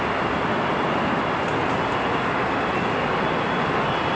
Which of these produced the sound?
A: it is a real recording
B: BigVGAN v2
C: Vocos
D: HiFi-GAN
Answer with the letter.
A